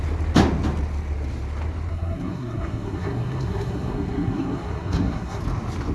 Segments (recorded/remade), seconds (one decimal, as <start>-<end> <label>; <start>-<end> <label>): 0.0-1.9 recorded; 1.9-5.4 remade; 5.4-5.9 recorded